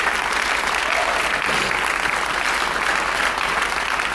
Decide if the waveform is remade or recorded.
recorded